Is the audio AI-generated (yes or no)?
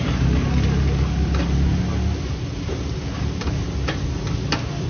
no